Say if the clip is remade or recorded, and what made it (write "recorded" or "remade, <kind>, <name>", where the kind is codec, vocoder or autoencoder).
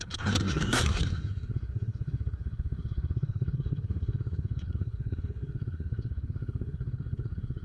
remade, codec, SNAC